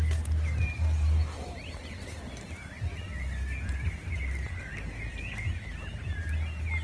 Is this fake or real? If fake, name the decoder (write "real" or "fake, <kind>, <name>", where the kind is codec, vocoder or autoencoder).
real